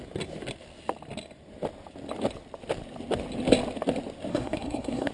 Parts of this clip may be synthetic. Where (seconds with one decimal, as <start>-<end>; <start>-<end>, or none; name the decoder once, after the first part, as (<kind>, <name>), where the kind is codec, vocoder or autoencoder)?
4.3-5.1 (codec, SNAC)